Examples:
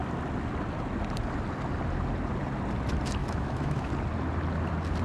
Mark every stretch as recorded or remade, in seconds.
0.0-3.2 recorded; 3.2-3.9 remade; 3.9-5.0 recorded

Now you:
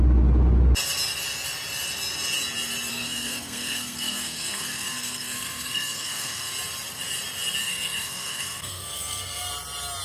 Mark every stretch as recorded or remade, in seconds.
0.0-2.9 recorded; 2.9-6.5 remade; 6.5-7.6 recorded; 7.6-9.5 remade; 9.5-10.0 recorded

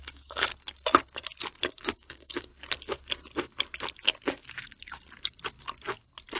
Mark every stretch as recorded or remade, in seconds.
0.0-0.5 remade; 0.5-1.7 recorded; 1.7-2.5 remade; 2.5-6.4 recorded